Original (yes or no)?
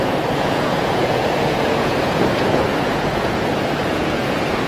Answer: no